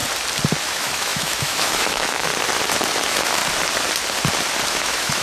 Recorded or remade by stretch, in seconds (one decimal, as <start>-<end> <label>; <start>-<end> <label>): 0.0-0.6 recorded; 0.6-2.3 remade; 2.3-3.0 recorded; 3.0-3.4 remade; 3.4-4.7 recorded; 4.7-5.2 remade